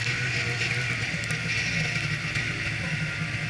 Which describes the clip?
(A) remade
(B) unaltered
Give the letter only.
B